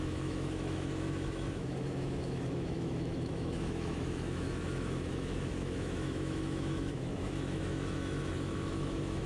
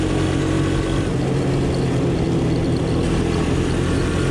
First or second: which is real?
second